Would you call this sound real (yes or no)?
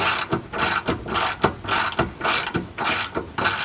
yes